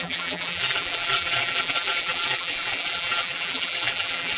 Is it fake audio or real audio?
fake